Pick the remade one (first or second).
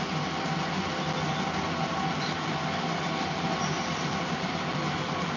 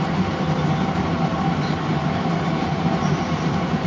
second